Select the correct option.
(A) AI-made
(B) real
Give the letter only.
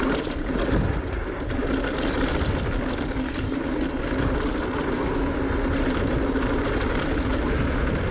B